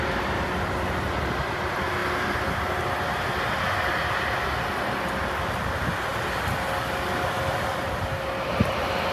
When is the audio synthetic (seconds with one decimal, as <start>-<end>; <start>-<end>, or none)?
none